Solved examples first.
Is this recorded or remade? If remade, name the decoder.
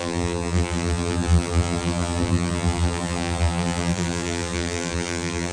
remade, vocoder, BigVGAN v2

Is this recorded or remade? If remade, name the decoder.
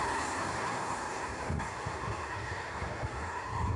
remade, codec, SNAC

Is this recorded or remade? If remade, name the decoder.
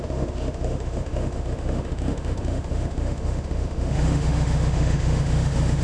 remade, autoencoder, DAC-VAE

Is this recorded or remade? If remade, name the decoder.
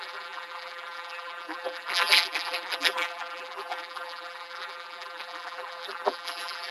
remade, vocoder, BigVGAN v2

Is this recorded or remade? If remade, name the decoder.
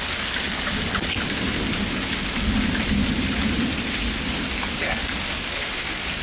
recorded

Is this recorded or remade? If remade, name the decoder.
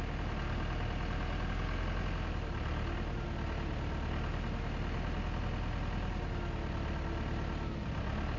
recorded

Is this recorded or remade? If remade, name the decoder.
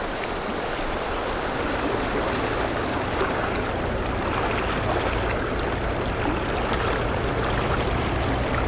recorded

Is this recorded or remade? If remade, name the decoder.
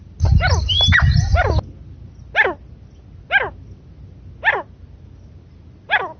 recorded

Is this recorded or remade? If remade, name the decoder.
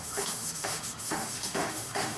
remade, autoencoder, DAC-VAE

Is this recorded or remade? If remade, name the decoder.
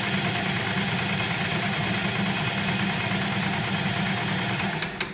recorded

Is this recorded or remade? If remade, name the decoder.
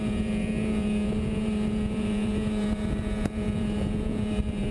remade, vocoder, Vocos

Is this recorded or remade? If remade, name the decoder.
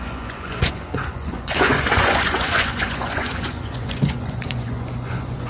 remade, vocoder, Vocos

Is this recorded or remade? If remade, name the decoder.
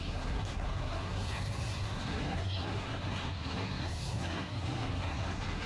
remade, codec, SNAC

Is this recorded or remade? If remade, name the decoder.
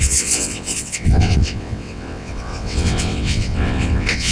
remade, vocoder, WaveNeXt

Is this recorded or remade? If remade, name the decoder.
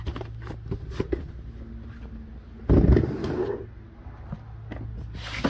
recorded